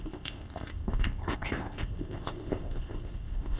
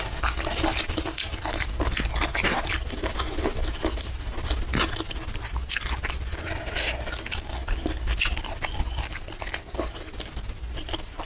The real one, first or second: second